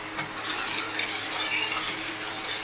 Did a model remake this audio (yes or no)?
no